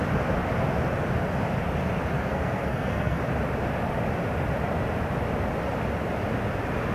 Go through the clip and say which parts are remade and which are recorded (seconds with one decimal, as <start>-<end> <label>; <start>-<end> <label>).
0.0-2.3 recorded; 2.3-3.2 remade; 3.2-6.9 recorded